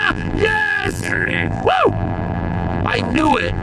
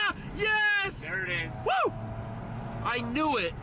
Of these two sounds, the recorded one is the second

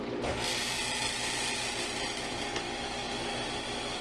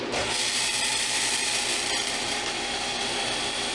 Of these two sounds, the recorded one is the first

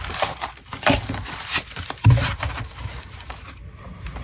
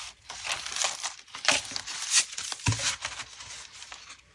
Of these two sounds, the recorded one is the second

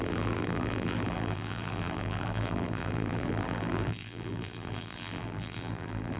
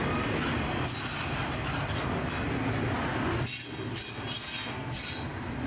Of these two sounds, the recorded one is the second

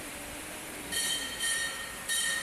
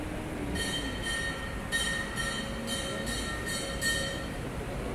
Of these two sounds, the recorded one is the second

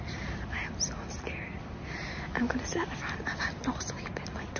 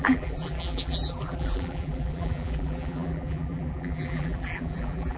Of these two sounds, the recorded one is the first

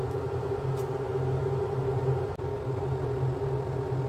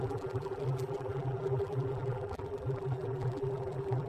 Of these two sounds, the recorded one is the first